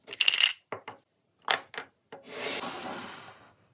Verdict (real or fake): real